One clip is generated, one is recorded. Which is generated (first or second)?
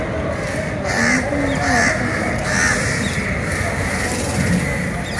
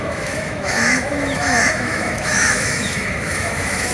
second